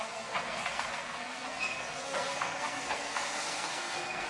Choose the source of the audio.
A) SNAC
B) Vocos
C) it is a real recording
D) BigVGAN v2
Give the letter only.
A